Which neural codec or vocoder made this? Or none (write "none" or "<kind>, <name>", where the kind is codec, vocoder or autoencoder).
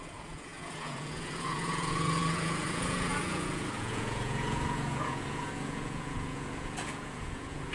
vocoder, Vocos